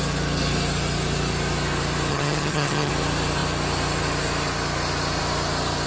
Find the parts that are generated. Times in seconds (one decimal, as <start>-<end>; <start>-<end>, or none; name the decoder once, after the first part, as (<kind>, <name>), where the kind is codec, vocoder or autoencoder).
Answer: 2.1-2.9 (vocoder, HiFi-GAN)